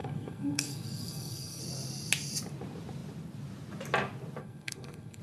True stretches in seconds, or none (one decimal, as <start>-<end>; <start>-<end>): 1.6-4.4